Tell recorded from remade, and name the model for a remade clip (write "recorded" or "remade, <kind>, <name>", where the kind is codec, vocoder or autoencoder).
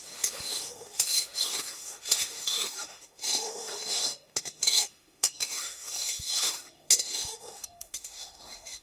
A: remade, autoencoder, DAC-VAE